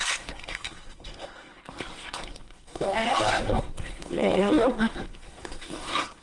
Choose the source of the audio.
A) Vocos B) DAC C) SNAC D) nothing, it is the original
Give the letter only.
C